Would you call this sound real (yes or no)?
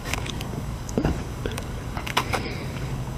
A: no